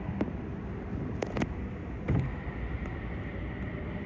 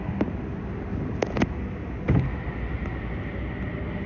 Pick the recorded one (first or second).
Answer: second